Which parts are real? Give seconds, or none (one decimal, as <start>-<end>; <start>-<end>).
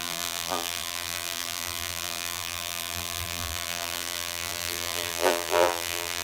none